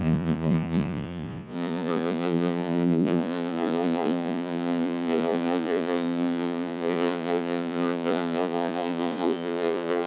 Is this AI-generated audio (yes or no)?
yes